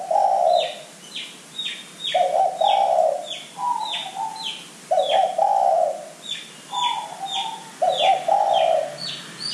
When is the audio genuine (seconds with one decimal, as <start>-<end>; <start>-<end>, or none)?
0.0-9.5